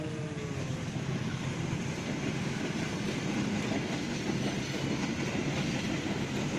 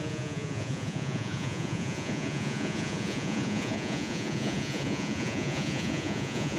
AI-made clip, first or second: second